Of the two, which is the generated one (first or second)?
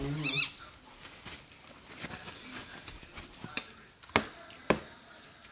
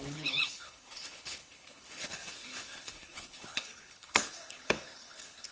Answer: second